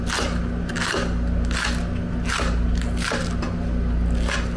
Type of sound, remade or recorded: recorded